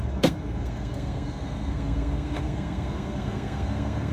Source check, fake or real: fake